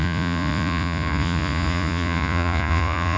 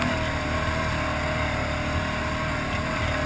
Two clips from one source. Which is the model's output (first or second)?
first